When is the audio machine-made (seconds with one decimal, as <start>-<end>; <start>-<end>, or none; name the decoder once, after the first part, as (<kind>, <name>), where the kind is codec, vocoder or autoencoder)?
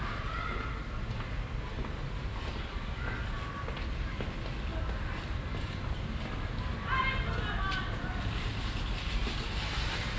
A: none